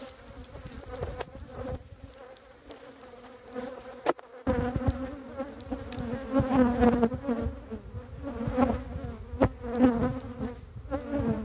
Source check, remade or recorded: recorded